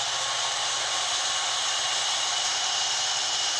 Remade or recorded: recorded